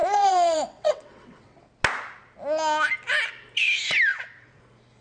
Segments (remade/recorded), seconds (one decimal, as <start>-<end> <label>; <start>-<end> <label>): 0.0-1.6 remade; 1.6-4.1 recorded; 4.1-4.6 remade; 4.6-5.0 recorded